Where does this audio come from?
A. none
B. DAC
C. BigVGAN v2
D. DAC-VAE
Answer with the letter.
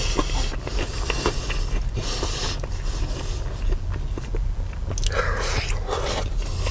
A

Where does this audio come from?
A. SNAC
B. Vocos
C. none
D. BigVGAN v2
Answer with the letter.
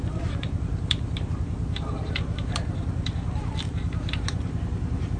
D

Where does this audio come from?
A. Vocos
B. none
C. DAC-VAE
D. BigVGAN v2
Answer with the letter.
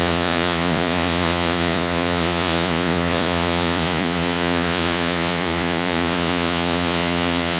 A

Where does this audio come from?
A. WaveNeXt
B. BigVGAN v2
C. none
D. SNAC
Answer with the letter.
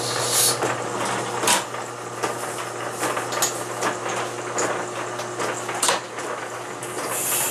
C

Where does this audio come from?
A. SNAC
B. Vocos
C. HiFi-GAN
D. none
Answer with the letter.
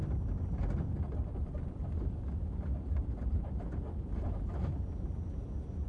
D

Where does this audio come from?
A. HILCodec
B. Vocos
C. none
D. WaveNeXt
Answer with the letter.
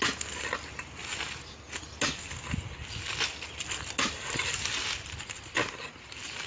C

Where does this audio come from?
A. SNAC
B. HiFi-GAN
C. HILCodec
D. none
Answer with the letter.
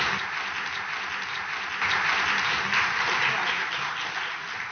D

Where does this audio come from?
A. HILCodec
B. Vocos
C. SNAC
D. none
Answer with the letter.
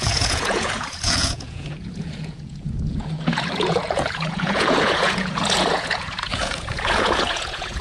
B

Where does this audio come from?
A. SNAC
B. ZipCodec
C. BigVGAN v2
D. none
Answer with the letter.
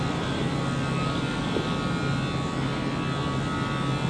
D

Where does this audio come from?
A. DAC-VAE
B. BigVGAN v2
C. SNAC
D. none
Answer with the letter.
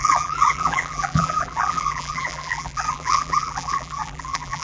B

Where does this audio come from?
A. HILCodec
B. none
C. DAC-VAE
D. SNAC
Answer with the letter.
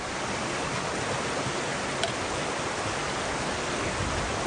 B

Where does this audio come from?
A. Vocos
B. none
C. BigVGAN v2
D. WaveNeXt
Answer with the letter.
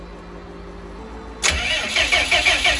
B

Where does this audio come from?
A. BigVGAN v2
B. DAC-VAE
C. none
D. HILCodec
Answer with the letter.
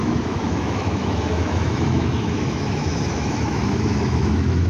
B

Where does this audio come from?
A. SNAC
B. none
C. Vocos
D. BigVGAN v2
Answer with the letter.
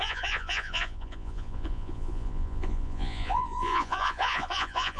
C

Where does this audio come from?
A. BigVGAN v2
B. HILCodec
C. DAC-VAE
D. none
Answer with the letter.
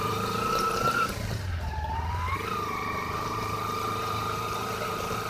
A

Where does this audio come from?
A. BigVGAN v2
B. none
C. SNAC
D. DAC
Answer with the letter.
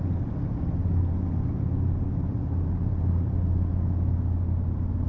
B